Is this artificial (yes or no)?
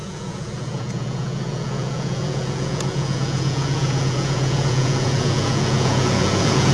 yes